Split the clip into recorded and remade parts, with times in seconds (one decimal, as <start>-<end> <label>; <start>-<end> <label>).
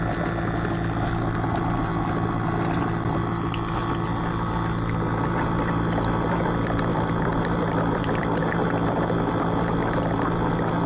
0.0-6.9 recorded; 6.9-8.4 remade; 8.4-10.9 recorded